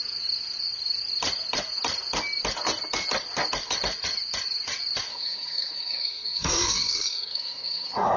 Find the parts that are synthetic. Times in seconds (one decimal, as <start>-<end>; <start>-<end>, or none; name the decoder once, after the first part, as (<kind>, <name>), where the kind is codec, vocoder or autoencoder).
5.1-8.2 (codec, SNAC)